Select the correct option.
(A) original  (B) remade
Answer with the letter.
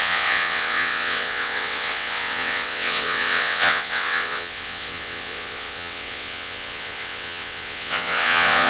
B